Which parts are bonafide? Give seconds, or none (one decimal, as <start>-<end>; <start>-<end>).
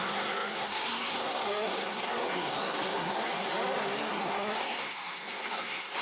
3.5-4.1